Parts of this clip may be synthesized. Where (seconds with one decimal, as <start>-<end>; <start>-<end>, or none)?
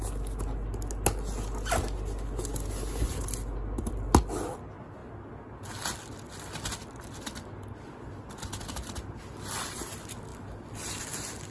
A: none